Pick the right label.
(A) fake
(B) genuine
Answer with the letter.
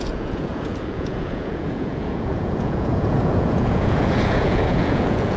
A